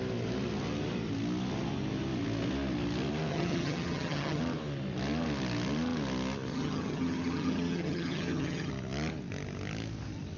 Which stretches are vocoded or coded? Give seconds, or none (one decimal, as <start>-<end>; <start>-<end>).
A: 3.3-4.4; 6.5-8.7